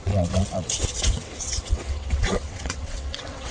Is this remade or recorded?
remade